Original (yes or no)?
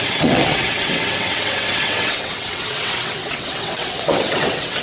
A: no